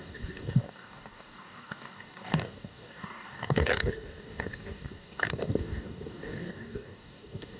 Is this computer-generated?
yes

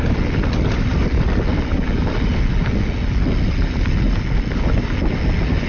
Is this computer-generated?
no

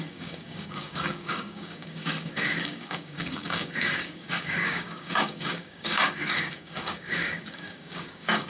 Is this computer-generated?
yes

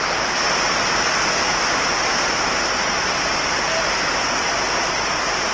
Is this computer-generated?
no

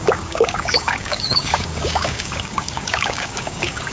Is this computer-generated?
yes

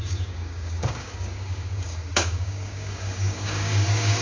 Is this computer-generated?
yes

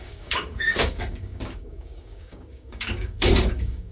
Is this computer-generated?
yes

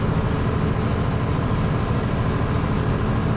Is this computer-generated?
no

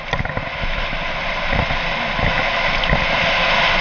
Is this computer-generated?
no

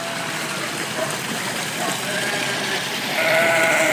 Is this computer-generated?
no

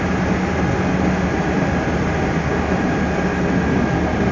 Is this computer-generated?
no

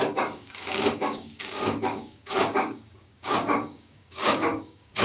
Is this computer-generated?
yes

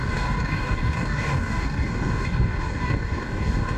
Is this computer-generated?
yes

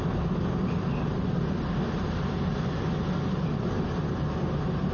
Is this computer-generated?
no